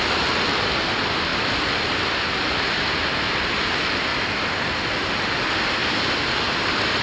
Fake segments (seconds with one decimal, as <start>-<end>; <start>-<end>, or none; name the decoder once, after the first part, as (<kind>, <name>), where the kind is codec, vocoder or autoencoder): 1.3-3.1 (vocoder, BigVGAN v2); 4.1-5.3; 5.8-7.0

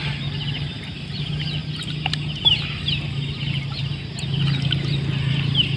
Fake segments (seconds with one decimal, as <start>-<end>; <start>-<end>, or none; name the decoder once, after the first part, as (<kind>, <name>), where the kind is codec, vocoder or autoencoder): none